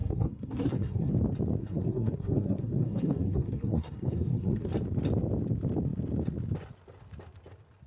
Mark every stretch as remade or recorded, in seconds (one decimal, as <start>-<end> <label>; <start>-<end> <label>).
0.0-1.1 remade; 1.1-1.6 recorded; 1.6-4.7 remade; 4.7-7.9 recorded